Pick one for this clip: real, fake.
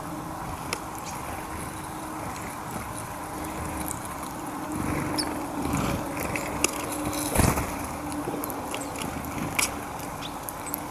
real